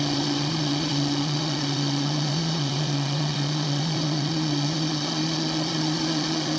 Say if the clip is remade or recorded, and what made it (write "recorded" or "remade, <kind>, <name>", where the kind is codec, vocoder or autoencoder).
remade, vocoder, Vocos